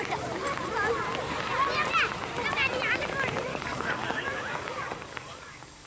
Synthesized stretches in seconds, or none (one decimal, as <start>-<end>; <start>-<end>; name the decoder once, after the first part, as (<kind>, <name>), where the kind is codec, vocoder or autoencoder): 3.5-5.9 (codec, DAC)